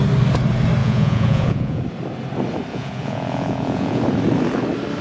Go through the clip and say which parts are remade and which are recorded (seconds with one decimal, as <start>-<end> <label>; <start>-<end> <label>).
0.0-0.8 recorded; 0.8-1.8 remade; 1.8-2.7 recorded; 2.7-4.0 remade; 4.0-5.0 recorded